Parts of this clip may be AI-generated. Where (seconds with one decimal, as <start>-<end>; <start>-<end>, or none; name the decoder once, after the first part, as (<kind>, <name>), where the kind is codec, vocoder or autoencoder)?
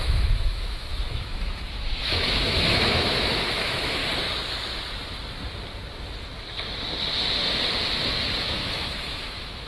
0.0-4.0 (autoencoder, DAC-VAE); 8.4-9.7